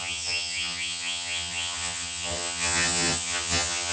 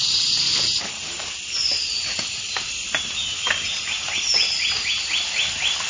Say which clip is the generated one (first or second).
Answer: first